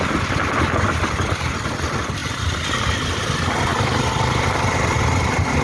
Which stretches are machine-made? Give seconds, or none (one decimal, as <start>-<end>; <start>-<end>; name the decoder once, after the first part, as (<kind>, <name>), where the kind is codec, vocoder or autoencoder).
none